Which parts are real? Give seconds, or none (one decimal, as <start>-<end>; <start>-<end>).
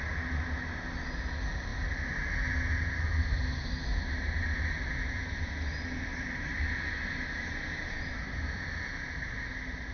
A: 0.0-6.1; 6.7-9.9